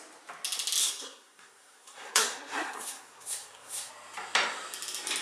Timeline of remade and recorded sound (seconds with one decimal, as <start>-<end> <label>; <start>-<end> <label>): 0.0-0.8 recorded; 0.8-3.9 remade; 3.9-5.2 recorded